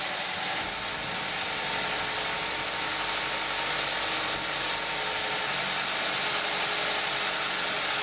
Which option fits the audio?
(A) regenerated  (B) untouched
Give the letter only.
B